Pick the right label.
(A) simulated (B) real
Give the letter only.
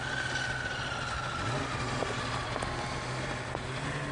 B